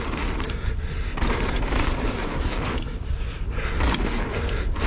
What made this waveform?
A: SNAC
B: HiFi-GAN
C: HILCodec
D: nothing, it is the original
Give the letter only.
D